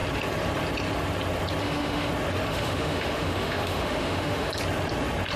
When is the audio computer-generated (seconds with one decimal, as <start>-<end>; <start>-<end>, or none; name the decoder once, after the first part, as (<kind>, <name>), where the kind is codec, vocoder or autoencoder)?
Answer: 1.6-2.1 (autoencoder, DAC-VAE); 2.5-4.5